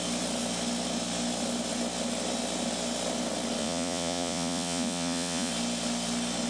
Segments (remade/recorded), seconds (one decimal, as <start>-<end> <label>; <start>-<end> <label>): 0.0-3.6 recorded; 3.6-5.5 remade; 5.5-6.5 recorded